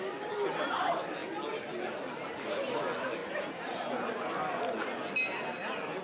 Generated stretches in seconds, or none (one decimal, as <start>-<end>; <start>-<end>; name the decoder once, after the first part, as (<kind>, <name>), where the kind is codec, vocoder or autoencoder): 3.2-4.2 (vocoder, BigVGAN v2)